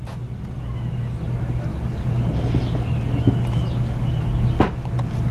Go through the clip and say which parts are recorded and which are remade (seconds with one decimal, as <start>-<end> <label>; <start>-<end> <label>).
0.0-5.3 recorded